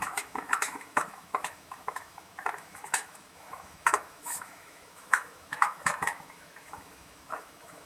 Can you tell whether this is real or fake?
fake